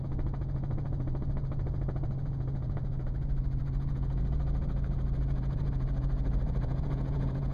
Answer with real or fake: fake